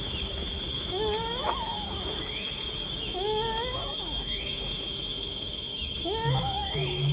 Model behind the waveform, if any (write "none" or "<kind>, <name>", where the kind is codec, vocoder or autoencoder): autoencoder, DAC-VAE